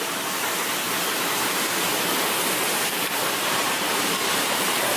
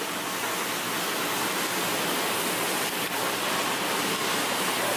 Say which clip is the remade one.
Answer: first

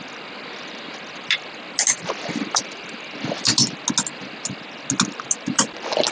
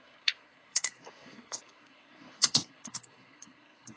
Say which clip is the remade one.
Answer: second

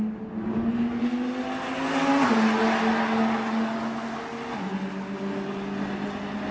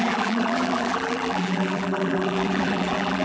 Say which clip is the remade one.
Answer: second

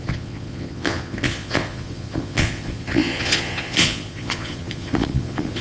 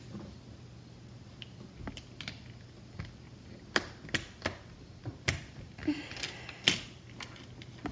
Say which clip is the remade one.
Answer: first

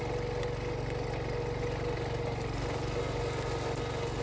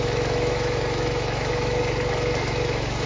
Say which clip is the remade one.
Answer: second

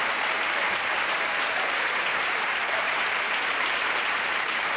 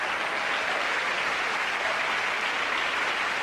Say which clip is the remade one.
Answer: first